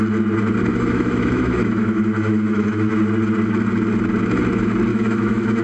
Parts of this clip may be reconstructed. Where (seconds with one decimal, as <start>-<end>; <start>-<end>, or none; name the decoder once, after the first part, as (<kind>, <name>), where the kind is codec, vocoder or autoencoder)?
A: 0.7-2.9 (autoencoder, DAC-VAE); 4.9-5.6